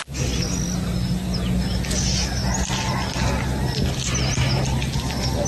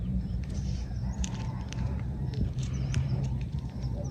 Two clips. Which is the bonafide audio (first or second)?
first